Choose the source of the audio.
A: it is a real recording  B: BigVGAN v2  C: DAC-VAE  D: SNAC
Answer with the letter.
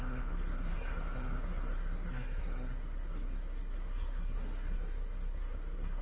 D